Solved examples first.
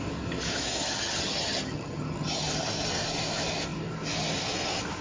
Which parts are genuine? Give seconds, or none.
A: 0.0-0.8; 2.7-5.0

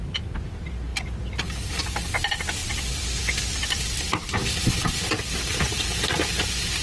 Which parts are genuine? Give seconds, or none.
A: 0.0-6.8

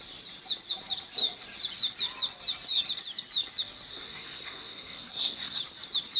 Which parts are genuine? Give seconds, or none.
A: 0.0-3.9; 5.6-6.2

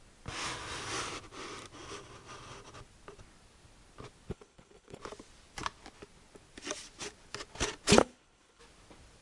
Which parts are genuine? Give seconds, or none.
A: 0.0-4.3; 5.0-8.0; 8.6-9.2

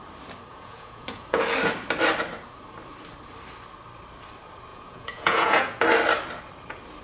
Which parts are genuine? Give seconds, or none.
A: 0.0-0.5; 1.4-4.7; 5.8-7.0

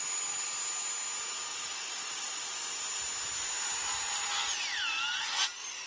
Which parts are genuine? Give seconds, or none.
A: 0.0-1.5; 2.4-5.9